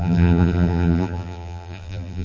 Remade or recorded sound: remade